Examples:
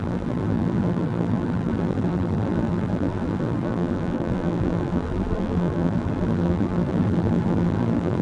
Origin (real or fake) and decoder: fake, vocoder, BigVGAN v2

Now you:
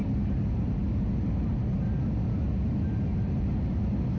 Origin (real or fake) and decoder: fake, vocoder, BigVGAN v2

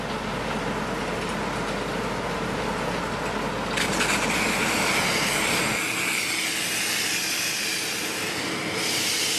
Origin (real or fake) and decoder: real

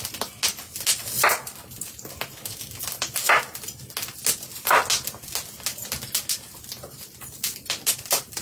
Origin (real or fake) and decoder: real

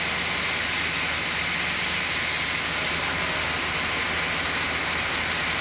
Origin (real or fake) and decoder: real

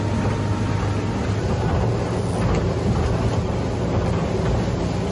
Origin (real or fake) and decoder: real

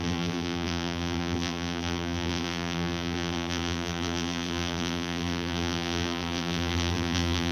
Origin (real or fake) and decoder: fake, vocoder, BigVGAN v2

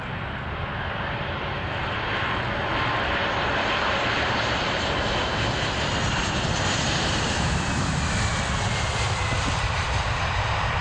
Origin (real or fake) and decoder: fake, vocoder, BigVGAN v2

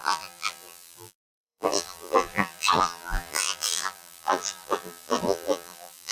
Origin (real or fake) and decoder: fake, vocoder, BigVGAN v2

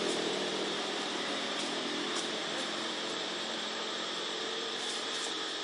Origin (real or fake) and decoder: fake, vocoder, BigVGAN v2